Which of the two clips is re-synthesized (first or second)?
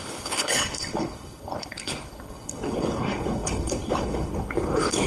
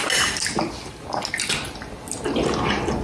first